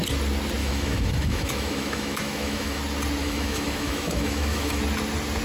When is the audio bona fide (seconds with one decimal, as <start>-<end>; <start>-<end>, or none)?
0.0-0.6; 2.8-3.2; 4.8-5.4